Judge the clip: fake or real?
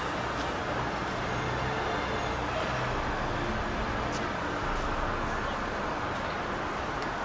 real